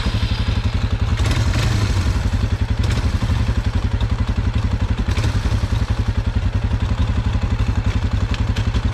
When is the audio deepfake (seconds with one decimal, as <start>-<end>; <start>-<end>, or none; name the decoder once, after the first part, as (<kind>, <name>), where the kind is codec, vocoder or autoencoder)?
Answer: none